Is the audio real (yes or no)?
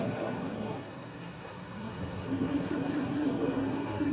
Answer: no